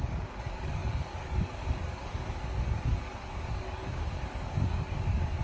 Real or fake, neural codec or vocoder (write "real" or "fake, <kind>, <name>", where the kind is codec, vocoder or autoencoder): fake, codec, DAC